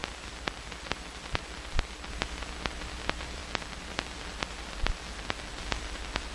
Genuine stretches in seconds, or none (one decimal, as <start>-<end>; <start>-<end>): 2.1-3.4; 5.6-6.3